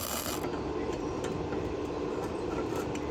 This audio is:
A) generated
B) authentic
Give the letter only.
B